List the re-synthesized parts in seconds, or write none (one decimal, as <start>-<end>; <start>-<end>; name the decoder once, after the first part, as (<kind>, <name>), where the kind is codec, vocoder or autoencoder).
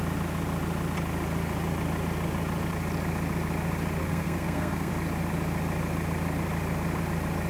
4.0-4.9 (codec, SNAC)